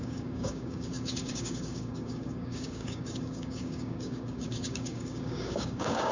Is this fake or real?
fake